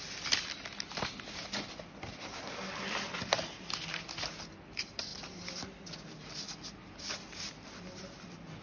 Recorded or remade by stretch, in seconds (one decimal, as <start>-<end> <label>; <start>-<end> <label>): 0.0-8.6 recorded